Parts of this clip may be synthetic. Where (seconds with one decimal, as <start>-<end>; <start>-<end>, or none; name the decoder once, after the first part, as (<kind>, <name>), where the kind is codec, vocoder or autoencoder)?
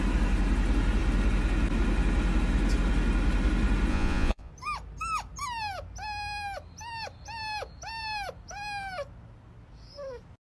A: 3.9-4.5 (vocoder, Vocos)